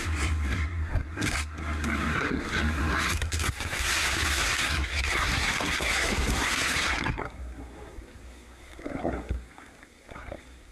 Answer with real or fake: fake